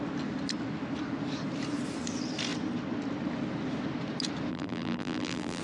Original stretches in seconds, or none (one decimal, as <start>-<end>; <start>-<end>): 0.0-4.5